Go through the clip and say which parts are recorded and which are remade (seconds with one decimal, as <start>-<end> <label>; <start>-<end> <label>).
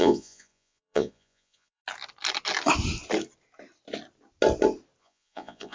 0.0-1.8 remade; 1.8-5.0 recorded; 5.0-5.7 remade